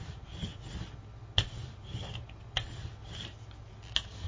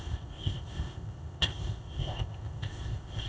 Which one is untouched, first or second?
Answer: first